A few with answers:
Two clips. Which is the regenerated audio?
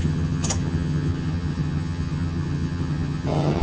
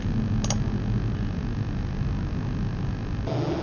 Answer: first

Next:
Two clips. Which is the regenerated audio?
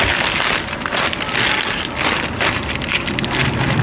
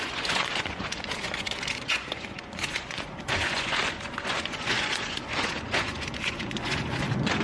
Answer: second